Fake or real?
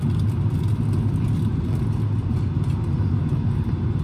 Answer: real